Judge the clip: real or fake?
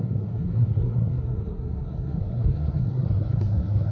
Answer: fake